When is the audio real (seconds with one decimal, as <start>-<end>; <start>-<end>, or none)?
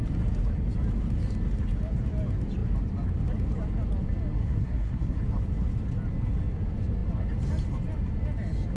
0.0-4.4; 5.2-8.8